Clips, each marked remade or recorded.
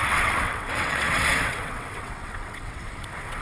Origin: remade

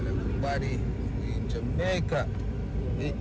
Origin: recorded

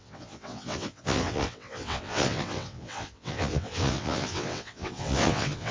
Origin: remade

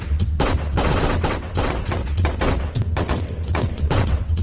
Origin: remade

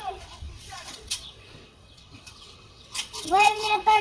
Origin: remade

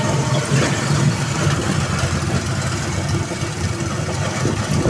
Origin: recorded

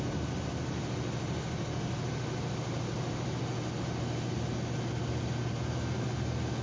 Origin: recorded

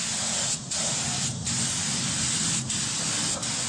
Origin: recorded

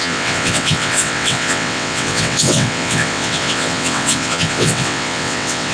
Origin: remade